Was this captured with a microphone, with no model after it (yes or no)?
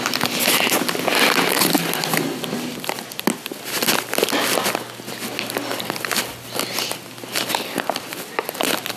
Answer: yes